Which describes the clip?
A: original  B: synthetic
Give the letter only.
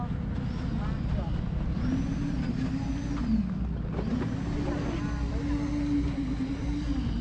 A